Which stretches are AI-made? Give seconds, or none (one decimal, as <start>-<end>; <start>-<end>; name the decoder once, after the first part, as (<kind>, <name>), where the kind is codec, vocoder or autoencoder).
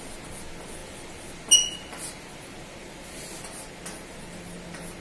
none